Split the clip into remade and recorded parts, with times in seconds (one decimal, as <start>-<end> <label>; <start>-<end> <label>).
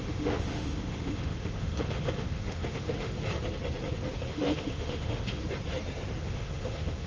0.0-3.1 remade; 3.1-4.3 recorded; 4.3-5.4 remade; 5.4-6.2 recorded; 6.2-7.1 remade